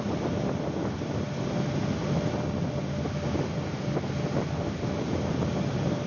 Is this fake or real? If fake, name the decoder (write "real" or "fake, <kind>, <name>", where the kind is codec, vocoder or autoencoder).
real